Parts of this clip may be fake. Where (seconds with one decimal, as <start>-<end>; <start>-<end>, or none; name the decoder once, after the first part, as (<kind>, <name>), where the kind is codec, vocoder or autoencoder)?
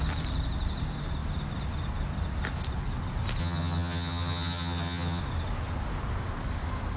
3.4-5.2 (vocoder, HiFi-GAN)